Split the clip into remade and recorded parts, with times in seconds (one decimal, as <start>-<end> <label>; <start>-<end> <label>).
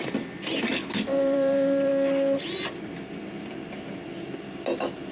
0.0-1.9 remade; 1.9-2.6 recorded; 2.6-5.1 remade